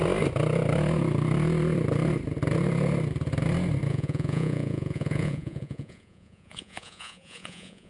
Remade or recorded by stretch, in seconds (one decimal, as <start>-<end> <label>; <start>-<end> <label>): 0.0-3.9 recorded; 3.9-7.9 remade